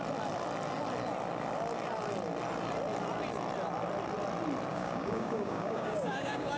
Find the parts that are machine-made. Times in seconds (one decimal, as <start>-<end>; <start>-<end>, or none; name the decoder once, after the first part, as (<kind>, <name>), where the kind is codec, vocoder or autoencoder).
4.7-6.6 (codec, DAC)